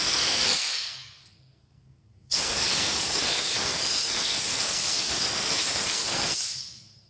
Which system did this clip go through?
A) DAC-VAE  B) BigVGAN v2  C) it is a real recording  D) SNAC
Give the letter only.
D